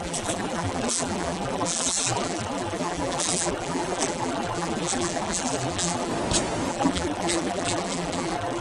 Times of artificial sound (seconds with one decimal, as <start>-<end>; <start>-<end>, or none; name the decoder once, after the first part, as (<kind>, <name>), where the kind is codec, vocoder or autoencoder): 0.0-6.1 (vocoder, BigVGAN v2); 6.7-8.6

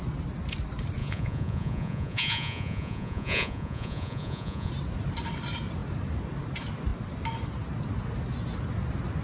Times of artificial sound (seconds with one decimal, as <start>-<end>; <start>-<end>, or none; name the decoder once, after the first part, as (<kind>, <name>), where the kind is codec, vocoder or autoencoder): 1.0-4.7 (vocoder, Vocos)

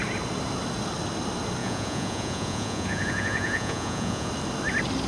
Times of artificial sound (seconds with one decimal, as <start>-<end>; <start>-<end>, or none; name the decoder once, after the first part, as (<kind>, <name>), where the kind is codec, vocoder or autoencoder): 1.6-4.3 (vocoder, Vocos)

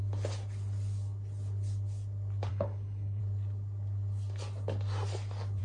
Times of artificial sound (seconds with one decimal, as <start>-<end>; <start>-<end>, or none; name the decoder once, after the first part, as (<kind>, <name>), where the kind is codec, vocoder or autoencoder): 2.5-3.2 (codec, HILCodec)

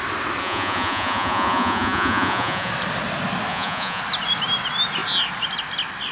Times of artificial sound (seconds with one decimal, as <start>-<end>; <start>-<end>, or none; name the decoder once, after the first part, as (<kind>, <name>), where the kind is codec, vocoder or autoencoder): 0.4-2.7 (vocoder, Vocos); 3.5-4.0

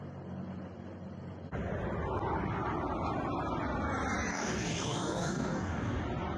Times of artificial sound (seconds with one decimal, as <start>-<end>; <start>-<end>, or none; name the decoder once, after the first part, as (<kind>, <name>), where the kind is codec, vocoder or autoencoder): 4.3-6.0 (codec, DAC)